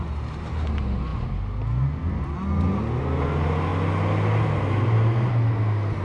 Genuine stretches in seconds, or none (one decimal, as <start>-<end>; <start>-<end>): 0.0-6.0